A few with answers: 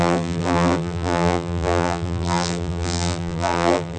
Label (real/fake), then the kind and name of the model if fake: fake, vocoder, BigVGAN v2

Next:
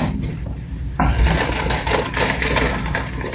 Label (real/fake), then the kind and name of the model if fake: fake, vocoder, BigVGAN v2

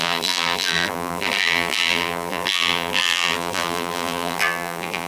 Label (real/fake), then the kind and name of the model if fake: fake, vocoder, BigVGAN v2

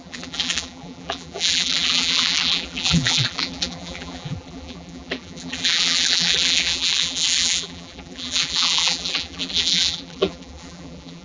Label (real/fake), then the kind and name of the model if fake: fake, vocoder, BigVGAN v2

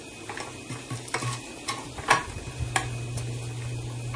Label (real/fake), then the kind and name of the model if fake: real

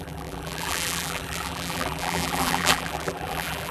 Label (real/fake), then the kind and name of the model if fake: fake, vocoder, BigVGAN v2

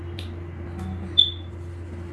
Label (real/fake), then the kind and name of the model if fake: real